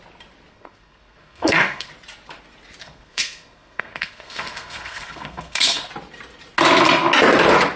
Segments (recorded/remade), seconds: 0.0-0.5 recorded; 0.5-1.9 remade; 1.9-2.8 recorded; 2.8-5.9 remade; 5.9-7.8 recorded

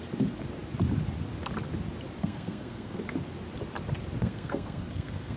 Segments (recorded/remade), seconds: 0.0-2.2 recorded; 2.2-3.0 remade; 3.0-4.2 recorded; 4.2-5.4 remade

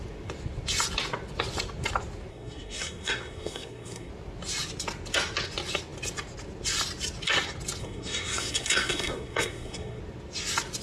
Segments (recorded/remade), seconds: 0.0-2.3 recorded; 2.3-4.1 remade; 4.1-7.8 recorded; 7.8-10.0 remade; 10.0-10.8 recorded

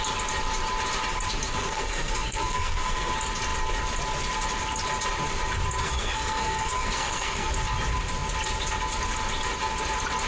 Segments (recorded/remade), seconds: 0.0-1.6 recorded; 1.6-3.1 remade; 3.1-5.8 recorded; 5.8-7.5 remade; 7.5-10.3 recorded

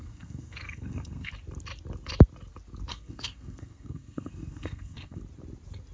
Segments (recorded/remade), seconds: 0.0-1.3 remade; 1.3-2.9 recorded; 2.9-5.2 remade; 5.2-5.9 recorded

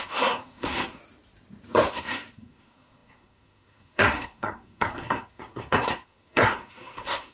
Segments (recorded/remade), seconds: 0.0-1.0 remade; 1.0-1.9 recorded; 1.9-7.3 remade

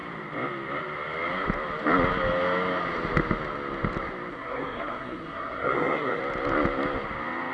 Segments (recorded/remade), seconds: 0.0-4.3 recorded; 4.3-6.2 remade; 6.2-7.5 recorded

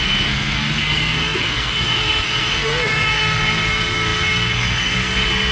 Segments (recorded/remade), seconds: 0.0-5.5 remade